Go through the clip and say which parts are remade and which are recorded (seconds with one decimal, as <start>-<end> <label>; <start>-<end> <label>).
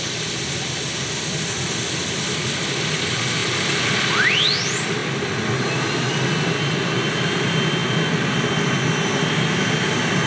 0.0-10.3 recorded